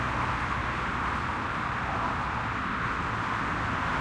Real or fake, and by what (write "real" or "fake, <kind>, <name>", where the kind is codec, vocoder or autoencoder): real